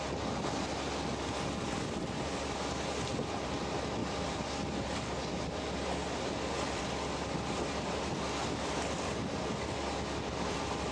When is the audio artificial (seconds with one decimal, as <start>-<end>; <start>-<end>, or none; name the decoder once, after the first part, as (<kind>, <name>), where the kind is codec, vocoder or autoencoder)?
4.0-8.1 (vocoder, BigVGAN v2)